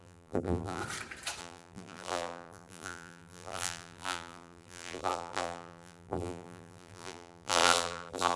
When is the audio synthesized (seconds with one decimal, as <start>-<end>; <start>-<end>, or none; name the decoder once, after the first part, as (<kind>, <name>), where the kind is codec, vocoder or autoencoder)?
0.0-0.8 (vocoder, BigVGAN v2); 1.4-8.4